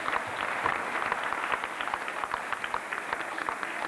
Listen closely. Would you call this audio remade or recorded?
recorded